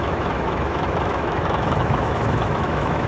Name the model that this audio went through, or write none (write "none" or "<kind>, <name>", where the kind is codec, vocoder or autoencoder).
autoencoder, DAC-VAE